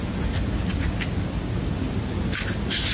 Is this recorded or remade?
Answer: recorded